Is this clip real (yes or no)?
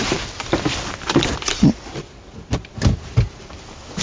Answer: yes